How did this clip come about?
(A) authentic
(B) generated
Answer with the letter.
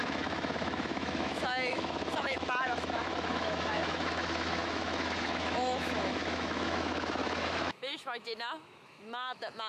B